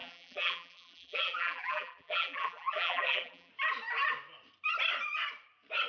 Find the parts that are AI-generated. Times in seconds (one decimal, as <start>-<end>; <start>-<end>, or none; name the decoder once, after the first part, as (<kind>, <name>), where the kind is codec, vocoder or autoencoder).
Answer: 0.0-3.5 (vocoder, BigVGAN v2)